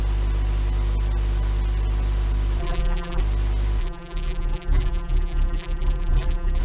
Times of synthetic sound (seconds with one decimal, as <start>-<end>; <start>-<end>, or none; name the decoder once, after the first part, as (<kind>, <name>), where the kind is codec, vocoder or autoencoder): 2.6-3.2 (vocoder, BigVGAN v2); 3.8-6.6